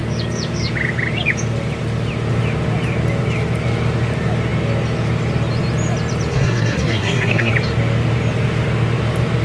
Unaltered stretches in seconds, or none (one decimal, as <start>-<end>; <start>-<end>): 0.0-6.3; 7.5-9.4